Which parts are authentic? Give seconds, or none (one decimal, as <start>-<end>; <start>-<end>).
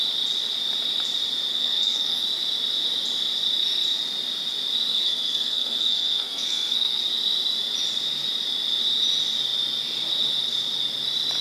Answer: 0.0-1.5; 2.2-4.9; 7.0-11.4